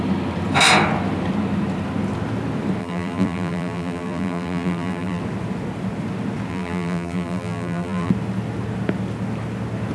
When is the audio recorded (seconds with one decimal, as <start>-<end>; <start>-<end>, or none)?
0.0-2.8; 5.2-6.5; 8.1-9.9